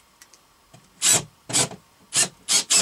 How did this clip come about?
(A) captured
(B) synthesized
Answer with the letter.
A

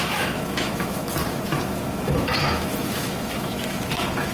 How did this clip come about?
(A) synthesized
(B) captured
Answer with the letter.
A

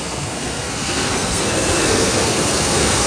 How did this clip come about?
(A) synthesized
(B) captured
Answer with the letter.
A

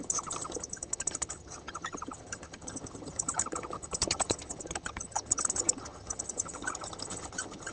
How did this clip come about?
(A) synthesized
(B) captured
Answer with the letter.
A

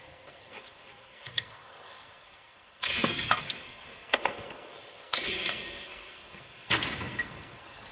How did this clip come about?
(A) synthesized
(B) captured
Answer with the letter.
A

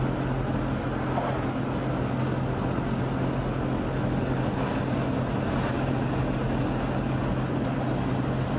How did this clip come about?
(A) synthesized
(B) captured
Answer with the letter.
B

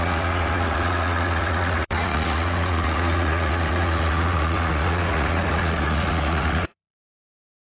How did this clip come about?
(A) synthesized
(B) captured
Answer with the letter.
A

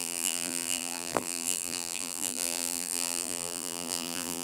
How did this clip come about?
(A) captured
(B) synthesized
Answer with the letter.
B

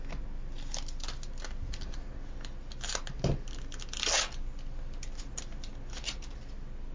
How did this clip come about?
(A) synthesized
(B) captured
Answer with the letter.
B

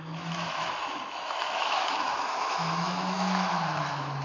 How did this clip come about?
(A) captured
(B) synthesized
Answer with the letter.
B